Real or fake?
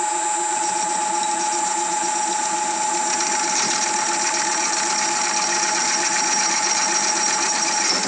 real